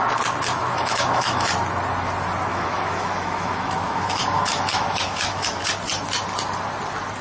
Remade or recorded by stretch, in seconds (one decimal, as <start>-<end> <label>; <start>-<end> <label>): 0.0-0.6 recorded; 0.6-1.5 remade; 1.5-2.5 recorded; 2.5-5.6 remade; 5.6-7.2 recorded